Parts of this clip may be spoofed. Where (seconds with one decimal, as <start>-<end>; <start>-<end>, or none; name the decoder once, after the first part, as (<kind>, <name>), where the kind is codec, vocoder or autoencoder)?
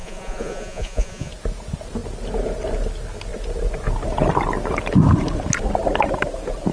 0.0-1.3 (vocoder, Vocos)